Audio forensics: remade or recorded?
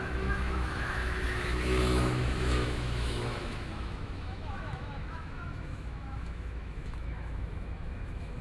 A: remade